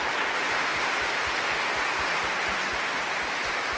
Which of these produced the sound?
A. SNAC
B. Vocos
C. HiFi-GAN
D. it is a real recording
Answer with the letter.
D